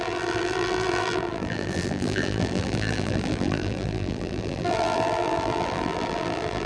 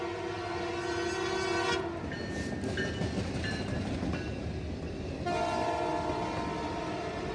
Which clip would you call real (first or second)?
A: second